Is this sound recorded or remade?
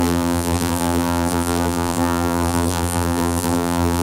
remade